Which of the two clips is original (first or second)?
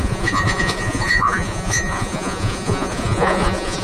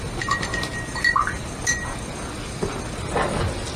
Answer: second